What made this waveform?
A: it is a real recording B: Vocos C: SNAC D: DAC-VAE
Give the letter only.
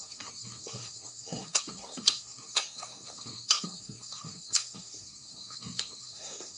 C